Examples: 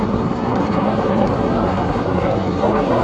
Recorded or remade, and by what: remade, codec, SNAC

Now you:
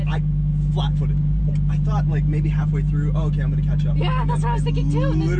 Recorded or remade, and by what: recorded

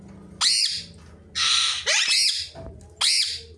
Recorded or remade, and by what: recorded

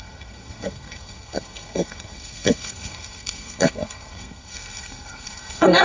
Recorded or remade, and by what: remade, codec, SNAC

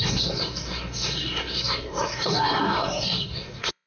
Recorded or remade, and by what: remade, codec, SNAC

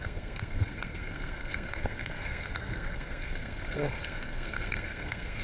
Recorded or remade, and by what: remade, codec, SNAC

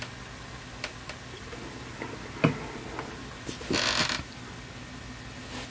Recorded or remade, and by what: recorded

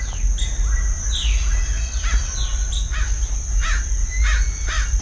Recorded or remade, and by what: recorded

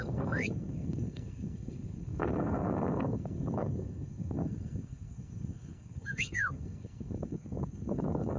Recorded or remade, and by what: remade, codec, SNAC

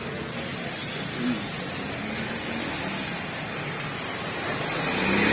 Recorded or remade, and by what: recorded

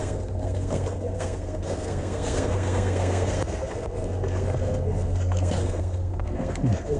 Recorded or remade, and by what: remade, codec, SNAC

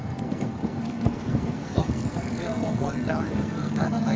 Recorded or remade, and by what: remade, codec, SNAC